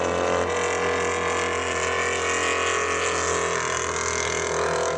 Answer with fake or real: real